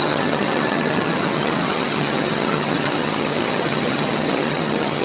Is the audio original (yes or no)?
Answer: no